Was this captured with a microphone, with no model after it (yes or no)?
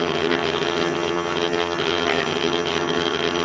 no